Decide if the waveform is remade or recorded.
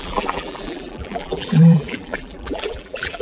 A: remade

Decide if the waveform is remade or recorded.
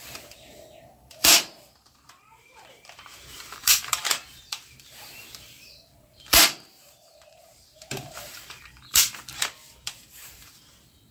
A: remade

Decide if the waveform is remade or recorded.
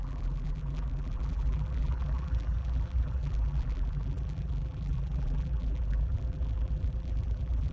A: remade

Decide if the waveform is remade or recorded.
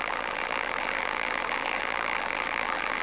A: remade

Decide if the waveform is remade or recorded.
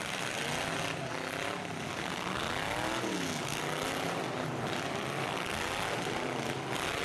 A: recorded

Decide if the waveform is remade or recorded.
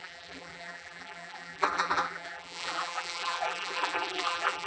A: remade